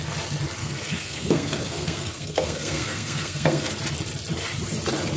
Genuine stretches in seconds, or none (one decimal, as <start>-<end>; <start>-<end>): 0.0-0.6; 3.7-5.2